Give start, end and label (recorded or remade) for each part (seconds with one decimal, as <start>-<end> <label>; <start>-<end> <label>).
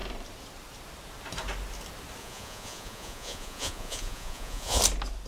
0.0-2.2 recorded; 2.2-4.8 remade; 4.8-5.3 recorded